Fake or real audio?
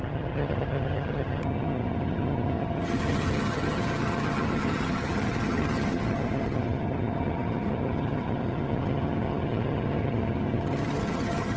fake